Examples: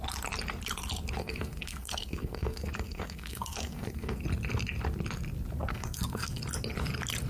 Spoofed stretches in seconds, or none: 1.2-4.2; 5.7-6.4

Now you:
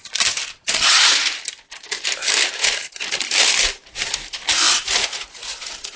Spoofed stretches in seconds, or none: 5.0-6.0

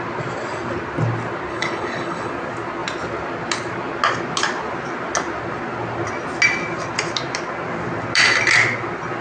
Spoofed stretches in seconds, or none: 1.5-2.3

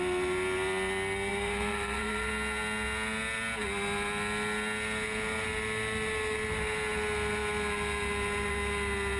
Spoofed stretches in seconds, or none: 1.3-2.3

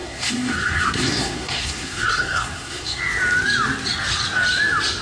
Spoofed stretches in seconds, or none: 0.0-3.0

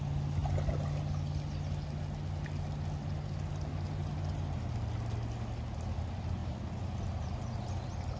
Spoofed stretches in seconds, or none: none

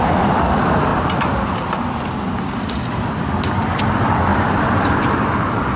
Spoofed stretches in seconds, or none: 4.3-5.0